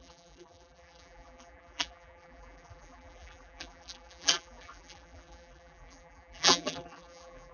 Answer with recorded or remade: remade